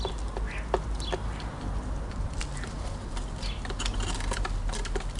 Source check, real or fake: real